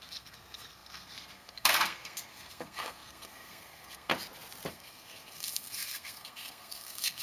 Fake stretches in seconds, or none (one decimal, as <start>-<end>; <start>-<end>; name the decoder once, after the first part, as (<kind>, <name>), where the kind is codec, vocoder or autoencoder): 0.0-4.1 (codec, SNAC); 4.7-7.2